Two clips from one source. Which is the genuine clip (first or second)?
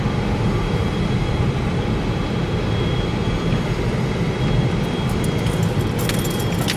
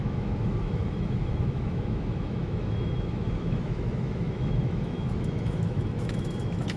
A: first